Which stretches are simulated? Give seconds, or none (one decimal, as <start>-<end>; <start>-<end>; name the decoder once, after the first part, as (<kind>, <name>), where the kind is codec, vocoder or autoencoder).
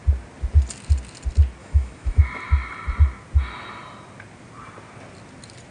1.6-2.2 (autoencoder, DAC-VAE)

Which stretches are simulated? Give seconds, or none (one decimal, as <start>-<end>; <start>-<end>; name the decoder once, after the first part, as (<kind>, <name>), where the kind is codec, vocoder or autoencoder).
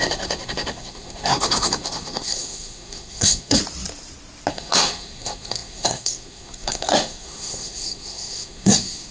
0.0-3.6 (codec, SNAC); 4.5-9.1